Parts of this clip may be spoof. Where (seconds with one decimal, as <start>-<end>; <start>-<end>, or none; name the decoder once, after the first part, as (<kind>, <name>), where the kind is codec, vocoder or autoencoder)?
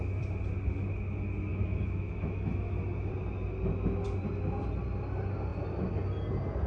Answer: 1.5-3.1 (autoencoder, DAC-VAE)